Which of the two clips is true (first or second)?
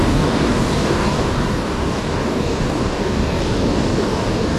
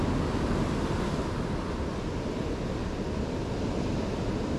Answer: second